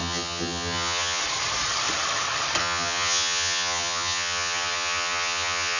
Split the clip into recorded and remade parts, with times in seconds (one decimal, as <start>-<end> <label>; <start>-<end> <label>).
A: 0.0-1.2 remade; 1.2-2.6 recorded; 2.6-5.8 remade